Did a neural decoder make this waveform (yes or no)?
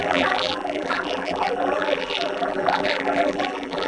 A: yes